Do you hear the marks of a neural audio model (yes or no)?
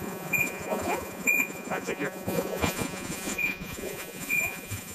yes